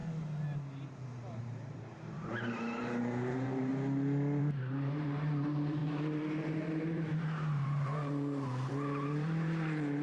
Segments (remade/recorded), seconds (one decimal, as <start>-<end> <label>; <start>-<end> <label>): 0.0-1.4 recorded; 1.4-3.7 remade; 3.7-4.4 recorded; 4.4-10.0 remade